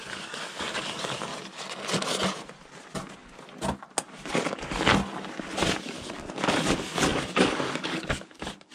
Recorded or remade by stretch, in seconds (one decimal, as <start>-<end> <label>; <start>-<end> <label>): 0.0-1.3 remade; 1.3-4.3 recorded; 4.3-4.9 remade; 4.9-5.8 recorded; 5.8-8.7 remade